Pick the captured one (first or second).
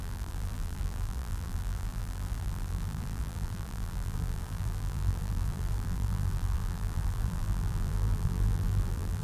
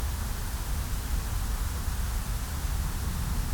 second